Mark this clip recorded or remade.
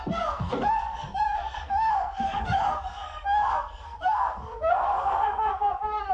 remade